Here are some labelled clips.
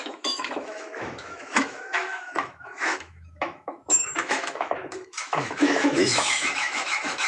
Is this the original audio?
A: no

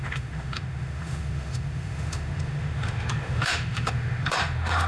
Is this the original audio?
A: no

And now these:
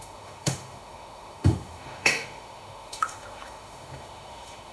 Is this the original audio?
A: no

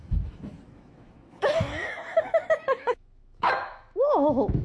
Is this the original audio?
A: no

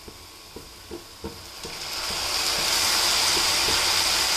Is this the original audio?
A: yes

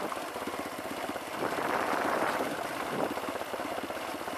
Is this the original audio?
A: yes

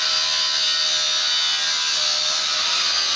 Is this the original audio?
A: yes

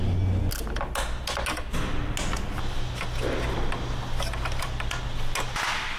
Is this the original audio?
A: yes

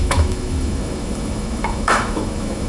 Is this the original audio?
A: no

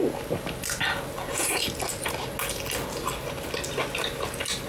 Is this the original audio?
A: yes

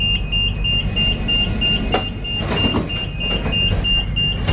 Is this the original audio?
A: yes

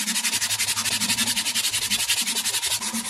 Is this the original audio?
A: yes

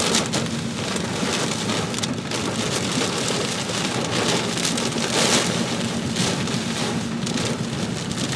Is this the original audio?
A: yes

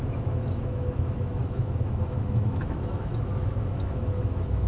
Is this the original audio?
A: no